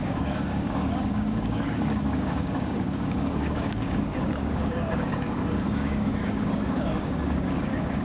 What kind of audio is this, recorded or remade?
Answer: remade